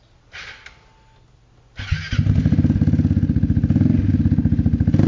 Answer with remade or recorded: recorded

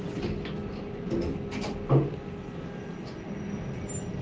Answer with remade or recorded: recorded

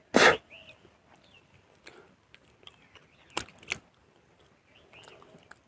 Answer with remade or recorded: recorded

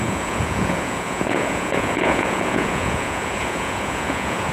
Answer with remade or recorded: remade